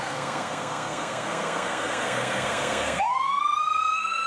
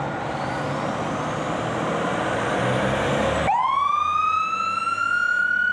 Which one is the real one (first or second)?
second